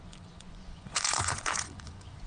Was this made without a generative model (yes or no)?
no